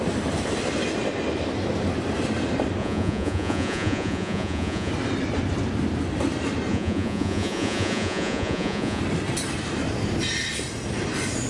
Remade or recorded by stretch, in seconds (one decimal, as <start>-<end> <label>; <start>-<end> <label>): 0.0-2.8 recorded; 2.8-4.9 remade; 4.9-6.7 recorded; 6.7-9.0 remade; 9.0-11.5 recorded